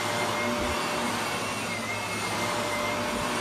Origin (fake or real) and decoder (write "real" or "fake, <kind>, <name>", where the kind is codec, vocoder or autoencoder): real